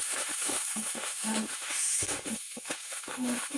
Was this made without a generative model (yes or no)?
no